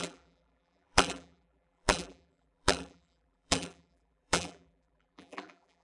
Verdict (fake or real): fake